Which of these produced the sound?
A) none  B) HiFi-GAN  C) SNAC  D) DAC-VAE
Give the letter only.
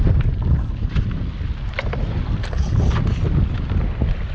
A